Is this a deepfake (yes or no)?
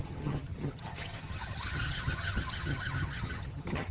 yes